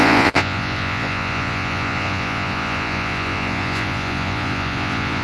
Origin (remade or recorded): remade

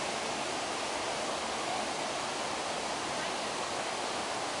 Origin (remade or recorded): recorded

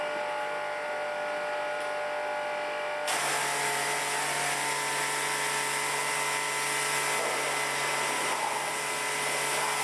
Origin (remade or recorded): recorded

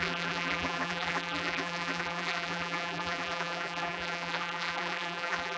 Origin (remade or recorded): remade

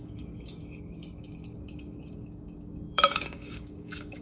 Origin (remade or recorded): remade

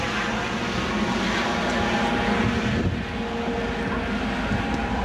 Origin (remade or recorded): recorded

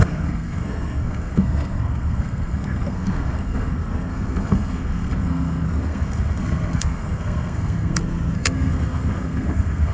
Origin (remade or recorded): remade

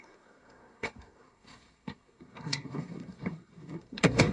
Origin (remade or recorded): remade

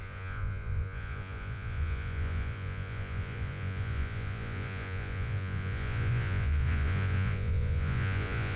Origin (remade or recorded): remade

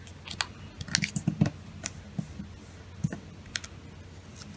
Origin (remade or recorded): recorded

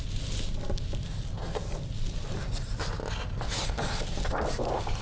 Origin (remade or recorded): recorded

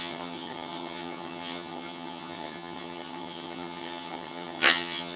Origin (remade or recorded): remade